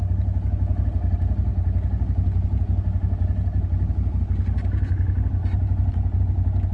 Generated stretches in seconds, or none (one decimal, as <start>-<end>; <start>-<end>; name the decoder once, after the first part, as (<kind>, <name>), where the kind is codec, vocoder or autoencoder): none